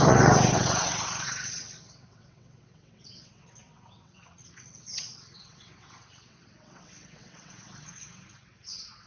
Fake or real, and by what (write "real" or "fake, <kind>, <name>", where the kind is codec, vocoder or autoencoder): fake, vocoder, WaveNeXt